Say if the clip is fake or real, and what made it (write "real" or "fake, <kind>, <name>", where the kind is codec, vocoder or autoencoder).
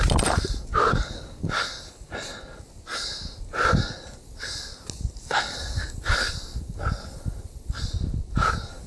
real